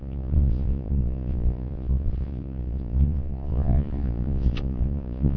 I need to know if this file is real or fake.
fake